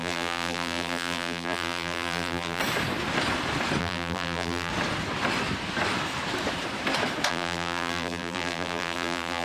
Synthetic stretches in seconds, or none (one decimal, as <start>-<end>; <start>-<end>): 0.0-2.6; 3.8-4.7; 7.3-9.4